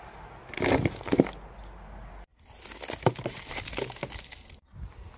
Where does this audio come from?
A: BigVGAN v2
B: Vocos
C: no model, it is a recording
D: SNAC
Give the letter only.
C